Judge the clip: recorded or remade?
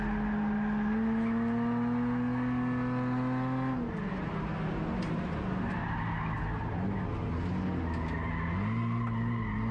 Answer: recorded